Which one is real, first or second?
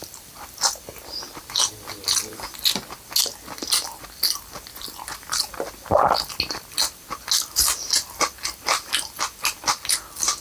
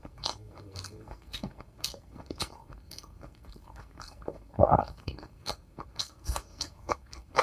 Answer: first